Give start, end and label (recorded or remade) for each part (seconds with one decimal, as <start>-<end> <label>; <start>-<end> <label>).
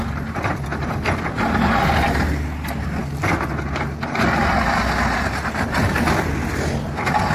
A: 0.0-7.3 recorded